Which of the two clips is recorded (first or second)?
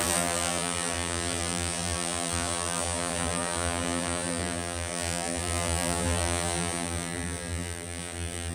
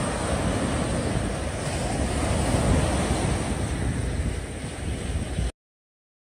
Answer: second